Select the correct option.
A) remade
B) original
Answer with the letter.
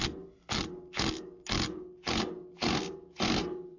B